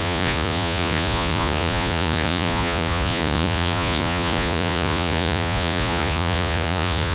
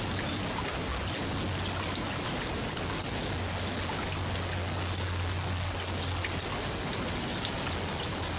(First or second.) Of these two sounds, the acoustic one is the second